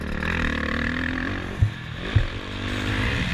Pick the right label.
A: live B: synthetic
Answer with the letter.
A